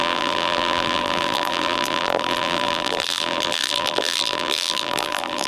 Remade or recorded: remade